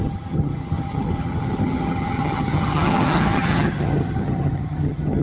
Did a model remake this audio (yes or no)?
yes